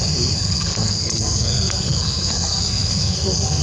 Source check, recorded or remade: remade